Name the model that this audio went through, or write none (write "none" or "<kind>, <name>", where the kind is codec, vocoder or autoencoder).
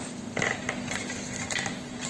none